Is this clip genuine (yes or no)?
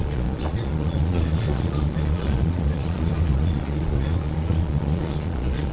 no